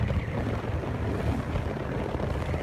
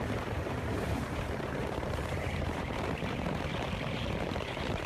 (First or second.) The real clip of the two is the first